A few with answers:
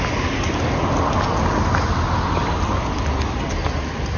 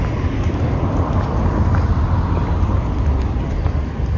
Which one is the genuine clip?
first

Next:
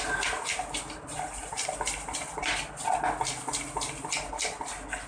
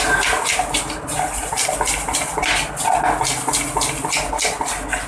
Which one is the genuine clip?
second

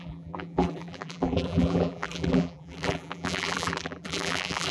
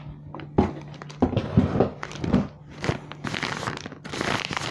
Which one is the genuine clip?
second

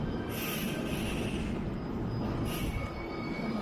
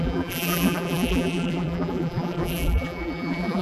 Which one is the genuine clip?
first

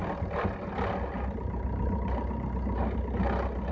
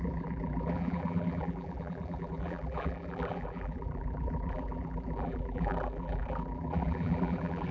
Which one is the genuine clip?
first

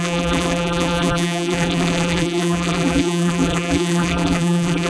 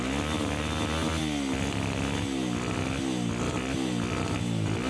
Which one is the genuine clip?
second